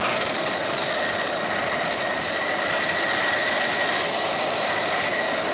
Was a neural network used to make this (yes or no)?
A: no